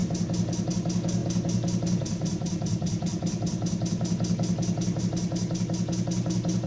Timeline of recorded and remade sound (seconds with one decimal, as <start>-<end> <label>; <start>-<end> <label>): 0.0-6.7 recorded